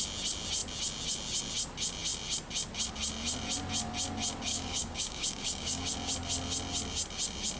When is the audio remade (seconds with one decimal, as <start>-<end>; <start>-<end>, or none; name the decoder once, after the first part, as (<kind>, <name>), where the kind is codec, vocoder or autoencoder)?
4.5-5.8 (codec, DAC)